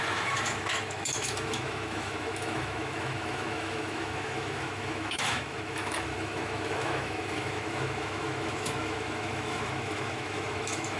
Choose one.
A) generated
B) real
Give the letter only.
A